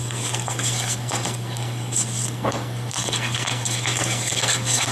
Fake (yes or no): yes